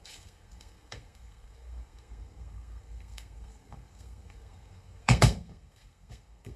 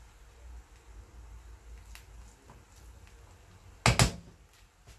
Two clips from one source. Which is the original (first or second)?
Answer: second